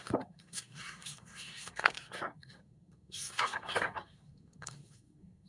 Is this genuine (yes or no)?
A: no